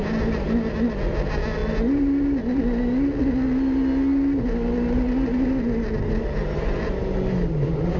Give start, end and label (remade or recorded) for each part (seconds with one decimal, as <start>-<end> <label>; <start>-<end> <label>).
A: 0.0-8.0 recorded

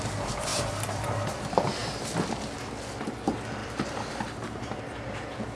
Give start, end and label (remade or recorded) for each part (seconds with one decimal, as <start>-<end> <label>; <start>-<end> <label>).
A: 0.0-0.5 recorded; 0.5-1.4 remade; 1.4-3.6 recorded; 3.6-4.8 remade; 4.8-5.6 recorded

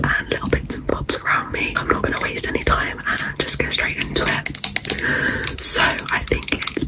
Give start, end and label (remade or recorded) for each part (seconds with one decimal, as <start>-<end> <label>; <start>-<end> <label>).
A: 0.0-0.9 recorded; 0.9-1.5 remade; 1.5-6.9 recorded

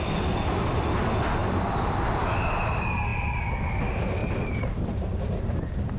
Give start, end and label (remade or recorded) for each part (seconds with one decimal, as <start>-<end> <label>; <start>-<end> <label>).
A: 0.0-4.2 recorded; 4.2-5.5 remade; 5.5-6.0 recorded

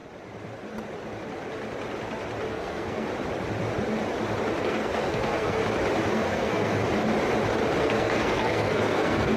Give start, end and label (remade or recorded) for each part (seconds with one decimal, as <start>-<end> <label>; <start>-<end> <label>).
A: 0.0-2.5 recorded; 2.5-3.1 remade; 3.1-4.6 recorded; 4.6-5.6 remade; 5.6-6.1 recorded; 6.1-6.8 remade; 6.8-7.8 recorded; 7.8-9.4 remade

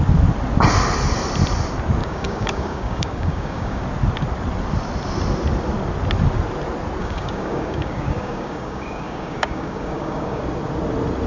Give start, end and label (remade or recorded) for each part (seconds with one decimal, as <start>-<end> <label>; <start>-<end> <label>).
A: 0.0-2.0 recorded; 2.0-3.8 remade; 3.8-7.0 recorded; 7.0-10.4 remade; 10.4-11.3 recorded

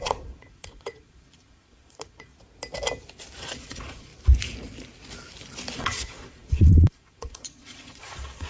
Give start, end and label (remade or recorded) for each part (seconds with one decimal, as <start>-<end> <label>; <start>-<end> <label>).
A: 0.0-2.3 remade; 2.3-3.4 recorded; 3.4-4.1 remade; 4.1-5.8 recorded; 5.8-8.5 remade